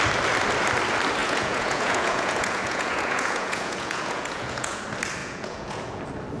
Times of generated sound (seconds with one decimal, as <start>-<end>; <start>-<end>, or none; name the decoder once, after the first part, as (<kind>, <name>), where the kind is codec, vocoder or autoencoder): 1.2-4.8 (vocoder, Vocos); 5.2-6.0